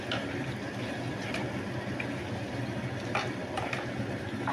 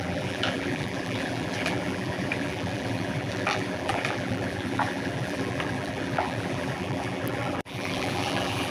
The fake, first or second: second